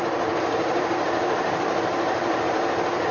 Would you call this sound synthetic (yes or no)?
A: yes